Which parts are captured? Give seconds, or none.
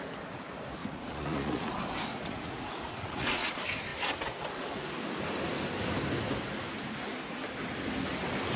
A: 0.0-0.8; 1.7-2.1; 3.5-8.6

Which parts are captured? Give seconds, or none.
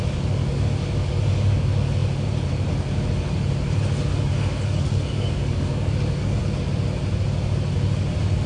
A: 0.0-0.4; 1.2-4.1; 6.4-8.5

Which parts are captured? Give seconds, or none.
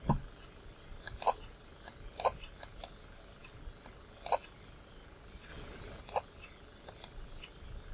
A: 0.0-7.9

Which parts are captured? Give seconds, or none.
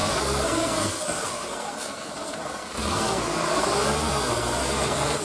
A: none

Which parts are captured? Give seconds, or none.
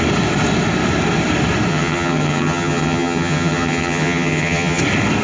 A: 0.0-1.7; 4.8-5.2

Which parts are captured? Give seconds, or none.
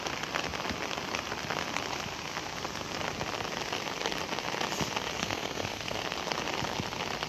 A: 0.0-5.2; 6.0-7.3